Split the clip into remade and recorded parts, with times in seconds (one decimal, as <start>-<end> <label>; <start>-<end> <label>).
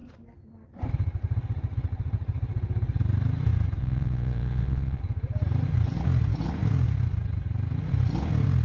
0.0-3.8 recorded; 3.8-5.0 remade; 5.0-8.6 recorded